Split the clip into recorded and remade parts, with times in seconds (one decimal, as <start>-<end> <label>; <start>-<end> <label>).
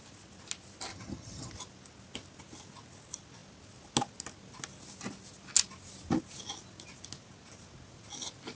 0.0-0.9 recorded; 0.9-1.5 remade; 1.5-8.5 recorded